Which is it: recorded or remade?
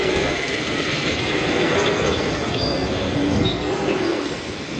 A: remade